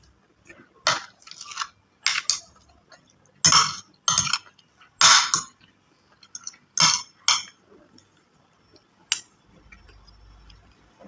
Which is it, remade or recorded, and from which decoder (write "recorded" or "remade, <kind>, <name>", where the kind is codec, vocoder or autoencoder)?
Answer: recorded